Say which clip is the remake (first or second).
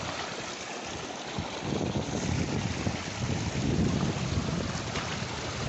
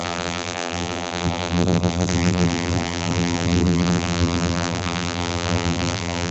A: second